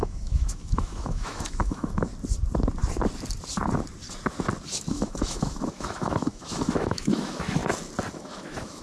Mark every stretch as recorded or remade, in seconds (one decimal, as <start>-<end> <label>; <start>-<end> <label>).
0.0-2.1 remade; 2.1-4.9 recorded; 4.9-7.6 remade; 7.6-8.1 recorded; 8.1-8.8 remade